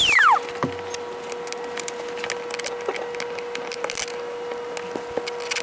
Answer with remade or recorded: recorded